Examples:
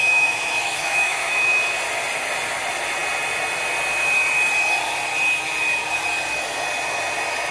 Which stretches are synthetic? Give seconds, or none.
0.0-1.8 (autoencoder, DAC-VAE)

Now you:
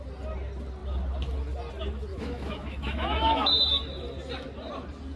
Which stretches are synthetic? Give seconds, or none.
2.1-3.6 (autoencoder, DAC-VAE)

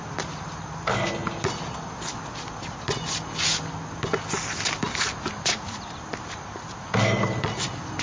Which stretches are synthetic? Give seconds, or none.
none

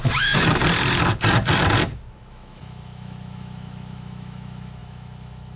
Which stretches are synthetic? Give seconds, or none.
0.0-0.6 (autoencoder, DAC-VAE); 2.3-5.6

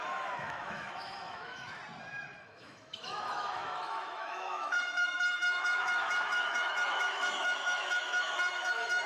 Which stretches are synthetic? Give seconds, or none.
0.0-1.8 (autoencoder, DAC-VAE); 2.4-9.1

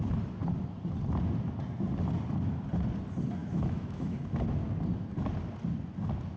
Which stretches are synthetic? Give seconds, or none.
3.4-4.2 (autoencoder, DAC-VAE)

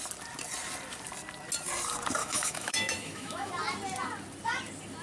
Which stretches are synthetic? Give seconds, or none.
2.2-3.5 (autoencoder, DAC-VAE)

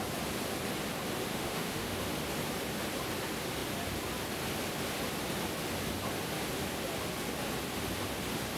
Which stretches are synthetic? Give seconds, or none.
1.3-2.0 (autoencoder, DAC-VAE)